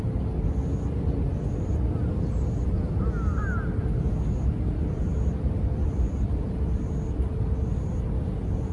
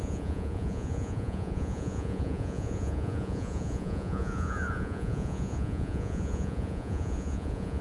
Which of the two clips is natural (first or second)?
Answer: first